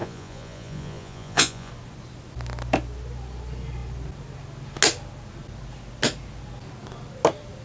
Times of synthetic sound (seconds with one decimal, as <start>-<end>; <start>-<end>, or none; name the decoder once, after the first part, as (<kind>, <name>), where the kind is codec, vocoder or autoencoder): 0.0-1.7 (vocoder, Vocos)